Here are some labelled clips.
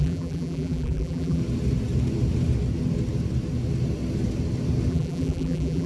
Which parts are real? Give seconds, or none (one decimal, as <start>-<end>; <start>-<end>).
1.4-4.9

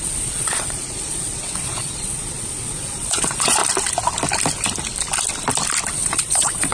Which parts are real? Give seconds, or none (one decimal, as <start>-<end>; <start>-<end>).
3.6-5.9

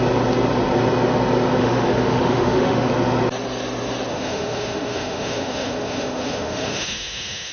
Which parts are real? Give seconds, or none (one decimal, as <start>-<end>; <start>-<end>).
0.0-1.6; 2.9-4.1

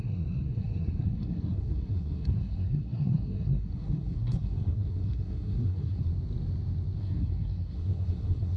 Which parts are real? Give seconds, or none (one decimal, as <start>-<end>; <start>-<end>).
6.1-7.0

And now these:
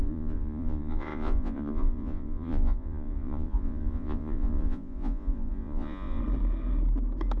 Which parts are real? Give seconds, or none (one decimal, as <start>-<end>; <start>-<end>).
6.2-7.4

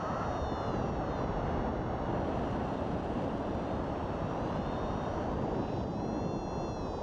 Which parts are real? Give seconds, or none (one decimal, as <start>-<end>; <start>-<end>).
0.0-1.7; 5.9-7.0